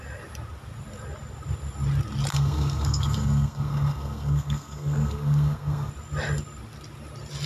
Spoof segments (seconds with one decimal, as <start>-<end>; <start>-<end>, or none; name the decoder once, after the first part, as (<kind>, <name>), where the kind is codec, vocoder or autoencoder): 2.3-5.9 (codec, SNAC)